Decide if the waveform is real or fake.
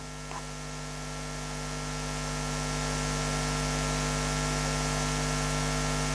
real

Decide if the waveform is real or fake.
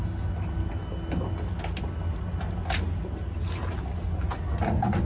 real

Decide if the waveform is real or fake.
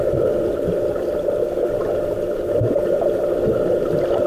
real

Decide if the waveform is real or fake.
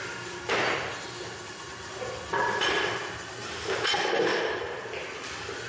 real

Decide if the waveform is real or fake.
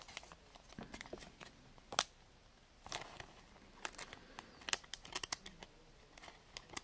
real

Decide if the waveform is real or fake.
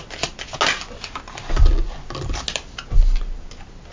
real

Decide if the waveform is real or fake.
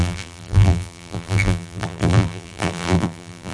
fake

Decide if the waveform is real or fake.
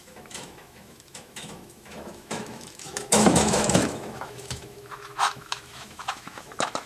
fake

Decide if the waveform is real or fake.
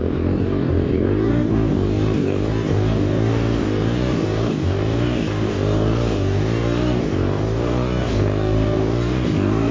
fake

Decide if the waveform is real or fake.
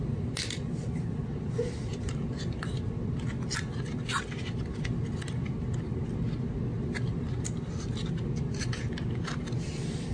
real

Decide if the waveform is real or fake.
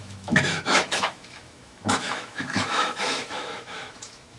fake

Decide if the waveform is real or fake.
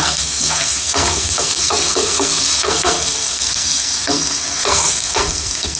fake